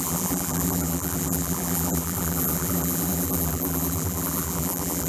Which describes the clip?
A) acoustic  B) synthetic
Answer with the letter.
B